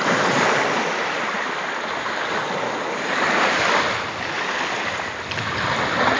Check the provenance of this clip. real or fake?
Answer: real